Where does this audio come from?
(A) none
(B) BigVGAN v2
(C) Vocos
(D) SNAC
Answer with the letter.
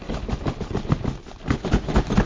A